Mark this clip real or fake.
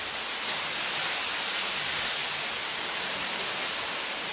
real